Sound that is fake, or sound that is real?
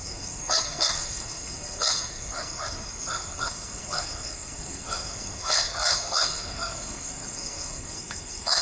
fake